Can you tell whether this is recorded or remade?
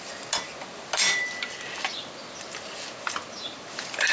recorded